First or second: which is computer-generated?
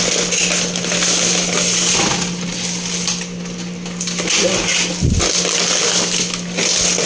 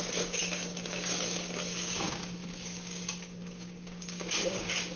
second